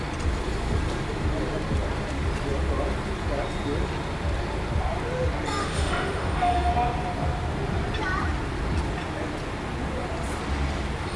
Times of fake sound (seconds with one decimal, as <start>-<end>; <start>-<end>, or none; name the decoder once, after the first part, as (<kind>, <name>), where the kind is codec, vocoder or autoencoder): 5.6-6.7 (autoencoder, DAC-VAE)